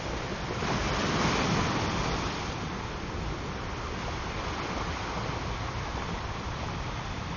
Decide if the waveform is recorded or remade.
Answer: recorded